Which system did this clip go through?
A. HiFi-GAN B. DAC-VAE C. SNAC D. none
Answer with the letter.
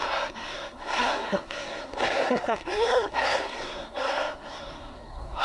C